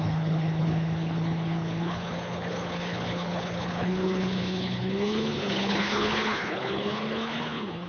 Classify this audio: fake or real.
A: fake